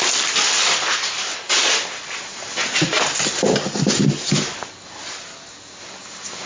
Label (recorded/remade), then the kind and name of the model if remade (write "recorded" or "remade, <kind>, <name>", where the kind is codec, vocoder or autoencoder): recorded